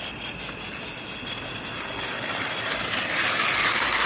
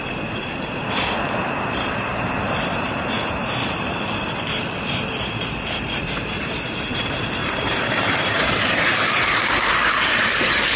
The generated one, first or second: second